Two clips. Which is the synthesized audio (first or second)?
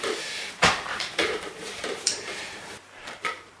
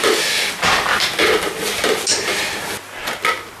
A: first